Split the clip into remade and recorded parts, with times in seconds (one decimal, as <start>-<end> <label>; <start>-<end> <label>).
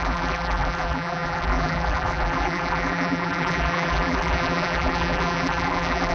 0.0-6.1 remade